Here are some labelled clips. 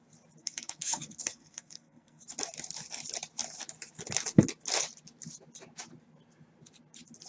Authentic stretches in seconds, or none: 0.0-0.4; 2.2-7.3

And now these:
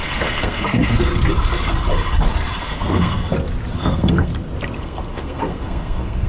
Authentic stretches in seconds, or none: 1.1-2.6; 3.2-3.8; 4.3-4.8

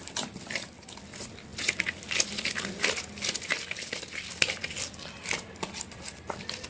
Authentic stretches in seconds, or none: 0.0-6.7

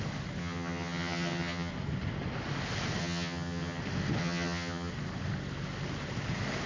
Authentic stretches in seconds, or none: 0.0-0.4; 1.7-3.0; 3.8-4.2; 4.9-6.7